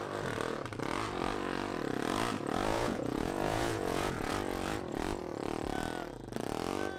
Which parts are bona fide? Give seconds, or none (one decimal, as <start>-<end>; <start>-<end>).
0.0-2.7; 4.3-7.0

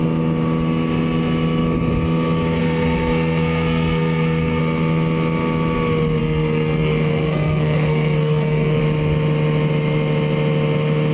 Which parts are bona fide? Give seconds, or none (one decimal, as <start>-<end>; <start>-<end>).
0.0-2.6; 4.6-6.2; 8.8-11.1